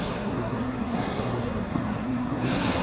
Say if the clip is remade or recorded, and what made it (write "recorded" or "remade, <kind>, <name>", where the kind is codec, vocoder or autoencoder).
remade, codec, SNAC